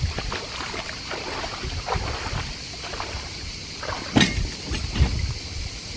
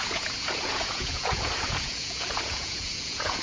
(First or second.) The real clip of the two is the first